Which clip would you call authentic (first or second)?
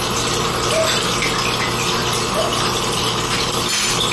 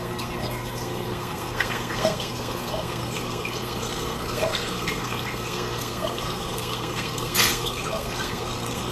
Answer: first